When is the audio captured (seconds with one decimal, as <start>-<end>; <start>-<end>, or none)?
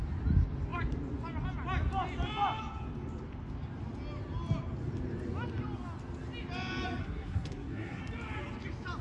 0.0-7.0; 8.0-9.0